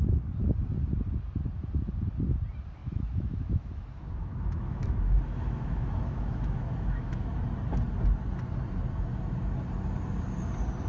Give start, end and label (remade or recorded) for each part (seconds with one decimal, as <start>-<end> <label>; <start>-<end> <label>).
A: 0.0-2.8 recorded; 2.8-7.4 remade; 7.4-10.9 recorded